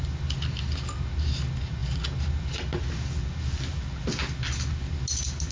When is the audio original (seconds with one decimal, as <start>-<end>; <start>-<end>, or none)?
0.0-5.5